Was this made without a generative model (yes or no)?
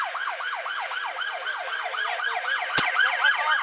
yes